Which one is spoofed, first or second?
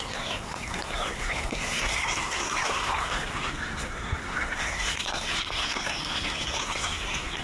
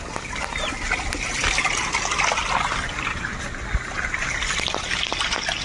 first